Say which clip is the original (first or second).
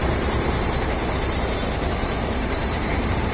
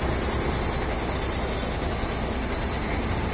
second